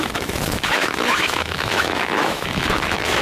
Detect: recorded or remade remade